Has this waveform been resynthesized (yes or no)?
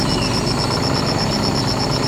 no